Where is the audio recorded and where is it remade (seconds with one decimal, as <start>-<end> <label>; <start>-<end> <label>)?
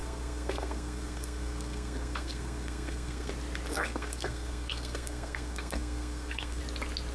0.0-3.3 remade; 3.3-3.7 recorded; 3.7-6.6 remade; 6.6-7.1 recorded